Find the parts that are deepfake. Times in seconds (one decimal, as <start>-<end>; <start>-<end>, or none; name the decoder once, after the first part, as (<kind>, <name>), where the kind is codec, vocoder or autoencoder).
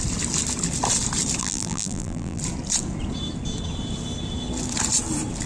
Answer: 1.4-2.4 (vocoder, BigVGAN v2)